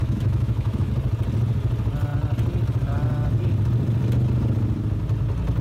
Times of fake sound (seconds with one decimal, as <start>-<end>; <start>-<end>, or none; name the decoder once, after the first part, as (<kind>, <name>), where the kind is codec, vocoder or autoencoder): 0.0-0.9 (autoencoder, DAC-VAE)